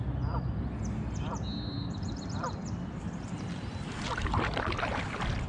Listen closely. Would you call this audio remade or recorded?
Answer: recorded